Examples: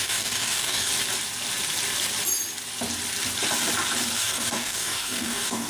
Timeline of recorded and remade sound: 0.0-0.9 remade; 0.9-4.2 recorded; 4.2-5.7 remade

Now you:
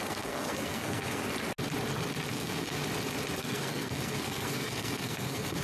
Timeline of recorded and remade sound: 0.0-1.2 remade; 1.2-2.3 recorded; 2.3-2.8 remade; 2.8-3.4 recorded; 3.4-5.6 remade